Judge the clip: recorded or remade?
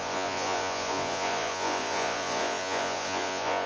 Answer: remade